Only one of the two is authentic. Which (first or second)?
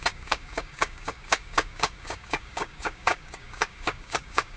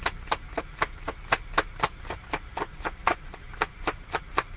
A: second